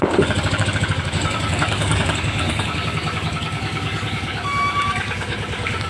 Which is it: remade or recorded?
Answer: remade